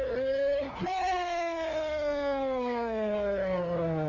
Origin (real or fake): fake